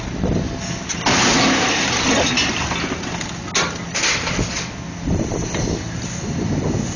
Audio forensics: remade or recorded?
recorded